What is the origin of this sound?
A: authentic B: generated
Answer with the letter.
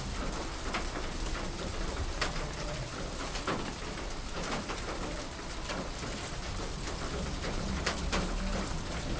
B